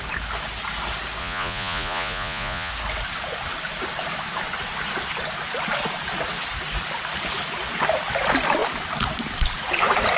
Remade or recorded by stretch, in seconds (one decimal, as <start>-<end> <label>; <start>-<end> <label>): 0.0-1.2 recorded; 1.2-2.7 remade; 2.7-10.2 recorded